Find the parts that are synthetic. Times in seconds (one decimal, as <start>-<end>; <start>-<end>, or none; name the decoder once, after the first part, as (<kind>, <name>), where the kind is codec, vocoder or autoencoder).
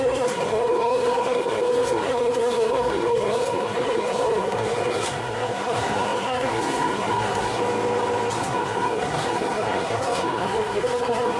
0.0-7.6 (codec, SNAC); 8.3-11.4